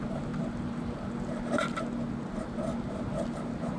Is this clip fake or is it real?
real